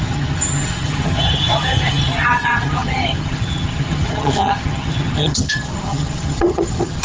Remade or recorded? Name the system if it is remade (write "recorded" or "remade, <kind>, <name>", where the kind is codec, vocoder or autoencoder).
remade, vocoder, HiFi-GAN